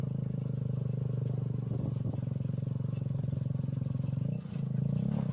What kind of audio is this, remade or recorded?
recorded